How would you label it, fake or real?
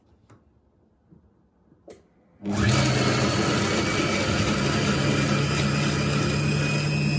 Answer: real